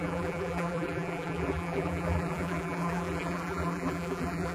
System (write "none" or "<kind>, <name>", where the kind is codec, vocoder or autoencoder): vocoder, BigVGAN v2